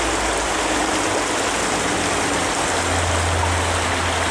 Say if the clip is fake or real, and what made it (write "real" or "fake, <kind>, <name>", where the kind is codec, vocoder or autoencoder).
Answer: real